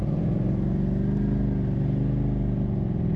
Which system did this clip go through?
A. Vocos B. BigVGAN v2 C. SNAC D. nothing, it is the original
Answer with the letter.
D